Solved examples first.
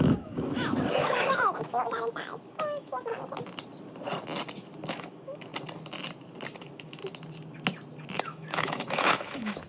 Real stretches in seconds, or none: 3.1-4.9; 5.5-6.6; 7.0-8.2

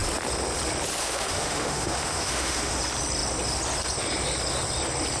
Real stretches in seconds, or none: 0.0-1.0; 2.8-5.2

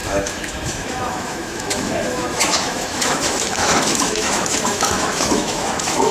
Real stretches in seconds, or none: none

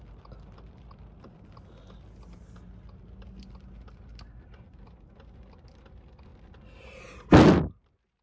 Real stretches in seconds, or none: 0.0-8.2

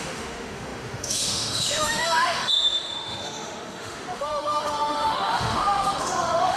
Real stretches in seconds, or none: none